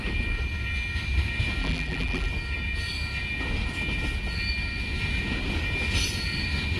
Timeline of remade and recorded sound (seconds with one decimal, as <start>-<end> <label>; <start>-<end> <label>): 0.0-1.6 recorded; 1.6-2.3 remade; 2.3-6.8 recorded